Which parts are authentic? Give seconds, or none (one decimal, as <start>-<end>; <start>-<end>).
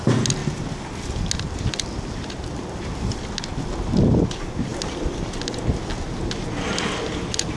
0.0-7.6